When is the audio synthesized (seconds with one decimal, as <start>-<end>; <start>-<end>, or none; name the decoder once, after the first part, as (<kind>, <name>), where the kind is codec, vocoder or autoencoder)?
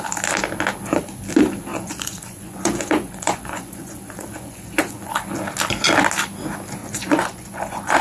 1.7-5.2 (vocoder, Vocos); 6.8-8.0